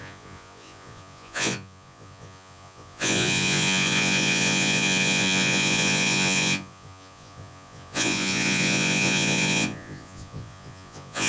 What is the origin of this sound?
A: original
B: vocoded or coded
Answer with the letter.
B